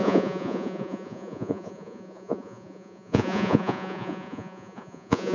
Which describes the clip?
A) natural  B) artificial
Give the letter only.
B